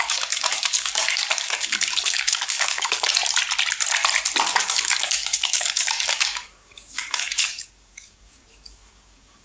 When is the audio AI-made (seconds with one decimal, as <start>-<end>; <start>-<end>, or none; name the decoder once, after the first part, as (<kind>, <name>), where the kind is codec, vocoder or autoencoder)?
0.0-3.1 (codec, DAC); 4.5-9.4